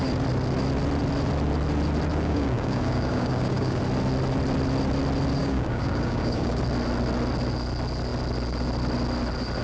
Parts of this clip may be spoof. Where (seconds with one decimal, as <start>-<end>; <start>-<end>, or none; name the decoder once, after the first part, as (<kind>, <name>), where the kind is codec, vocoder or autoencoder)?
2.1-3.8 (codec, DAC); 5.4-6.6